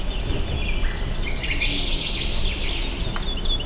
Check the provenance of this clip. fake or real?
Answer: real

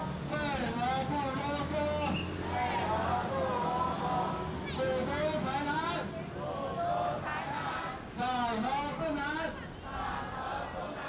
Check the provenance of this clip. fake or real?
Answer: real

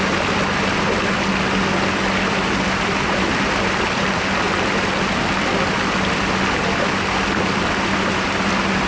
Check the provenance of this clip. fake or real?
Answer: real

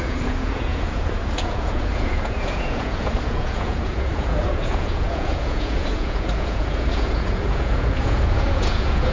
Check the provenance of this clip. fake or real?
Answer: fake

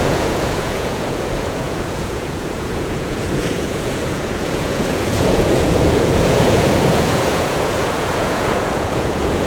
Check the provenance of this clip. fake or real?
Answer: fake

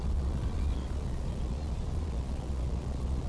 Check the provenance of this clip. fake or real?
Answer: fake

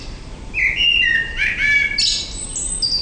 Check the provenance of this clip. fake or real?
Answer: real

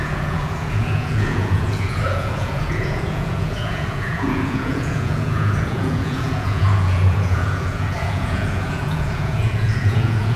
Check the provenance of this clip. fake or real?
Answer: fake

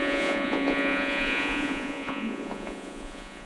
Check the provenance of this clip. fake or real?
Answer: fake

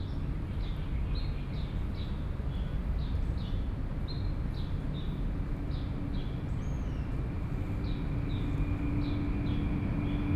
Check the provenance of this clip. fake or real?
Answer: real